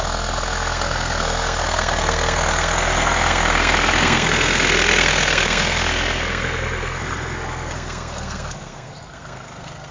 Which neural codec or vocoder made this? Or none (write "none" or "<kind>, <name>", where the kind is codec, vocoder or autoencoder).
codec, SNAC